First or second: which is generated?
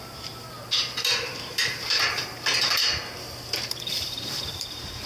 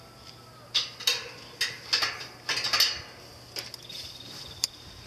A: first